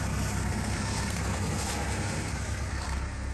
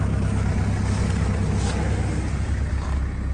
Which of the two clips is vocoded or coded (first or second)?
first